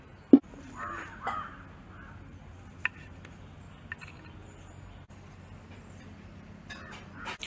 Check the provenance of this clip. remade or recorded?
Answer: recorded